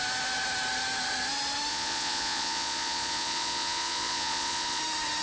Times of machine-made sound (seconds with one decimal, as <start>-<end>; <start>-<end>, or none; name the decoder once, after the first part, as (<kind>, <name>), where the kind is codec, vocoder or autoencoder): 1.7-4.8 (vocoder, Vocos)

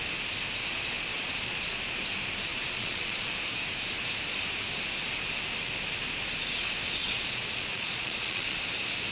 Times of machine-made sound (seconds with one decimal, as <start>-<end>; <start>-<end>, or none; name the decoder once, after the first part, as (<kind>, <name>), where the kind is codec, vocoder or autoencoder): 1.1-1.8 (vocoder, Vocos); 2.5-3.3; 7.0-8.6

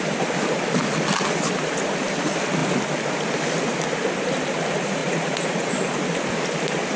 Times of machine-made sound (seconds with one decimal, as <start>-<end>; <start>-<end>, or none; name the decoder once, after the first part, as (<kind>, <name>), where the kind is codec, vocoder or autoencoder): 5.0-5.7 (vocoder, Vocos)

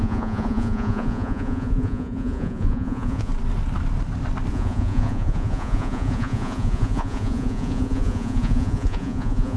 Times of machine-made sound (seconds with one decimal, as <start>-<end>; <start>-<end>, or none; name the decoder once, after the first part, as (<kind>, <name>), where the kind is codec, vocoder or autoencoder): 0.0-3.3 (vocoder, Vocos); 4.5-9.6

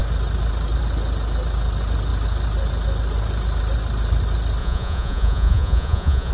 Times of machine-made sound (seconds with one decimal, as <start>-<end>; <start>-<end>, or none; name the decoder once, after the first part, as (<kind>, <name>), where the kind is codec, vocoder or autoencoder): 4.6-6.3 (vocoder, Vocos)